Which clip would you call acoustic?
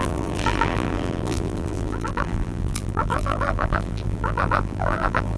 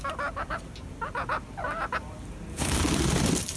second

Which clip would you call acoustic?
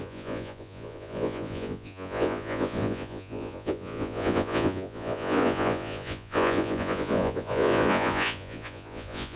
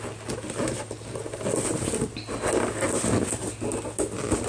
second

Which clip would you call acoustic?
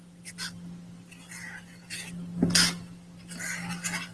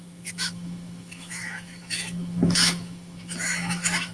first